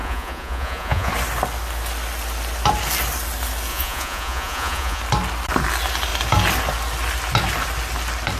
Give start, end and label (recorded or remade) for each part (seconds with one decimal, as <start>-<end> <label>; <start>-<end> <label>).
0.0-1.1 remade; 1.1-3.7 recorded; 3.7-5.0 remade; 5.0-8.4 recorded